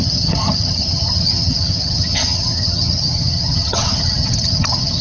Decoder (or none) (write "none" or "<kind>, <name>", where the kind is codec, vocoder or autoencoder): vocoder, HiFi-GAN